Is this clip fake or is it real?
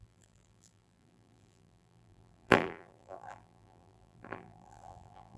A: fake